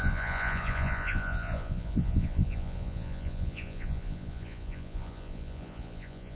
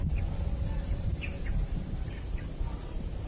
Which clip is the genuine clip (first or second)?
second